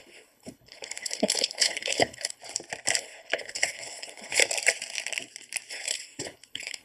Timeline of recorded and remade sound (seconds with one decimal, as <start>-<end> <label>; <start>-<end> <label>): 0.0-2.4 remade; 2.4-3.0 recorded; 3.0-4.4 remade; 4.4-5.7 recorded; 5.7-6.8 remade

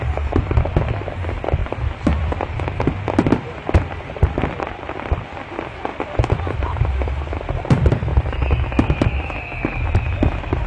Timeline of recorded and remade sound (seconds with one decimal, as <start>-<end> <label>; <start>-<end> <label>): 0.0-8.1 remade; 8.1-8.8 recorded; 8.8-10.7 remade

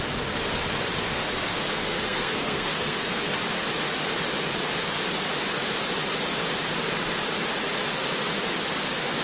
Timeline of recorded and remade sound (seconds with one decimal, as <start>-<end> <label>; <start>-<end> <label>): 0.0-1.1 recorded; 1.1-3.4 remade; 3.4-9.2 recorded

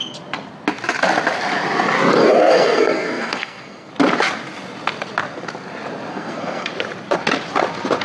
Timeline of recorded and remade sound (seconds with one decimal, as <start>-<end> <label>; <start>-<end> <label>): 0.0-2.2 recorded; 2.2-3.9 remade; 3.9-6.1 recorded; 6.1-6.7 remade; 6.7-8.0 recorded